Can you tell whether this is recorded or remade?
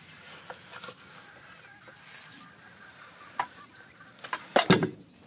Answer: recorded